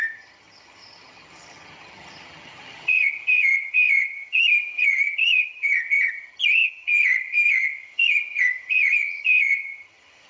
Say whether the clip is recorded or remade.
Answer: remade